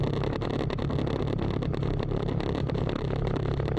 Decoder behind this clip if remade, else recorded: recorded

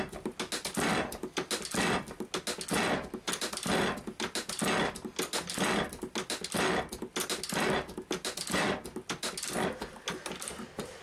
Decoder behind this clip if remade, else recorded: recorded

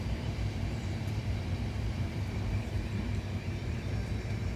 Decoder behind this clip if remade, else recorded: remade, vocoder, BigVGAN v2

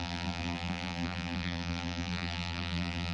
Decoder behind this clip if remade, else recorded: remade, vocoder, BigVGAN v2